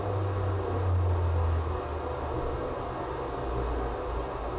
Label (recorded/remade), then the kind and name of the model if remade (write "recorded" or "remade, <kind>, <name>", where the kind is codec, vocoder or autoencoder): recorded